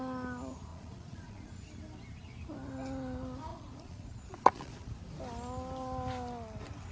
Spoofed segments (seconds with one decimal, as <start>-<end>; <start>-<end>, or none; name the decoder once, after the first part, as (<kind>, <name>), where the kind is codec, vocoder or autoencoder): 0.7-1.5 (vocoder, Vocos); 3.5-4.9